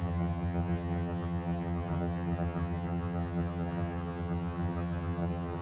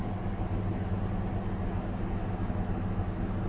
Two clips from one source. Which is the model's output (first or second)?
first